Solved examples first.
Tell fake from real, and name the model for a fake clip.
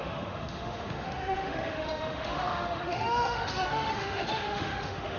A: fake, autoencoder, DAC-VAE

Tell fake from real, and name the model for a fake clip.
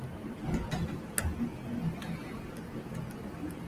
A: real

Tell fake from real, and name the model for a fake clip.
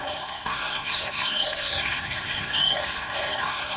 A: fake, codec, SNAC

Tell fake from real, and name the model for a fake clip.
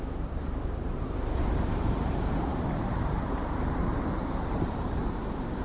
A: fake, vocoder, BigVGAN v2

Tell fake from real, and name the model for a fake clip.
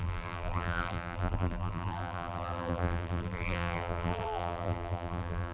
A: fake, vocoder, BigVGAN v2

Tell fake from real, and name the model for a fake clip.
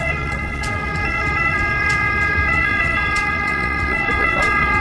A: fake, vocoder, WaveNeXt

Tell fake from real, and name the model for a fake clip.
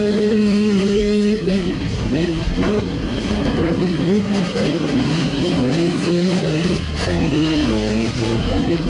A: fake, codec, SNAC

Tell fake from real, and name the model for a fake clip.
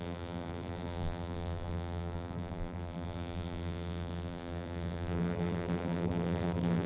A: fake, vocoder, BigVGAN v2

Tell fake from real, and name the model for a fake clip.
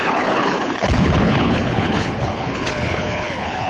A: fake, codec, HILCodec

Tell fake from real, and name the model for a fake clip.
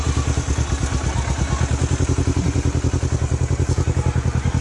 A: real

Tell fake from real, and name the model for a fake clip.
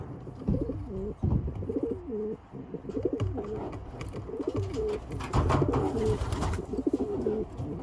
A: real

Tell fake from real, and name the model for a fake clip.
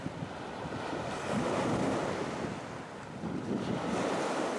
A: real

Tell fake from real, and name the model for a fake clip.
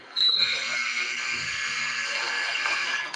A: fake, codec, SNAC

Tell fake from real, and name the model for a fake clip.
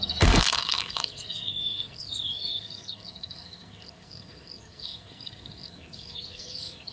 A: fake, codec, SNAC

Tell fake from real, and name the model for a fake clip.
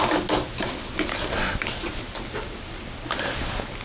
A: real